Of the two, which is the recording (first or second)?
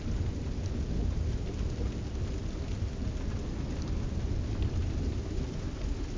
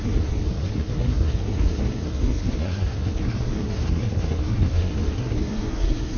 first